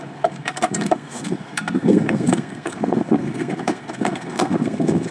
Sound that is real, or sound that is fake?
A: fake